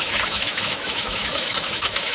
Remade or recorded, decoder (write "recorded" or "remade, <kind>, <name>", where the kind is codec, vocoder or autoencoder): remade, autoencoder, DAC-VAE